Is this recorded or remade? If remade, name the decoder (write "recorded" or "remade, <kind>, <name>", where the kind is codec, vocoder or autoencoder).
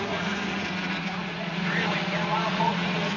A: remade, vocoder, Vocos